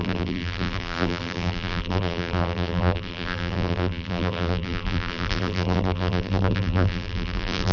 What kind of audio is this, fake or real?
fake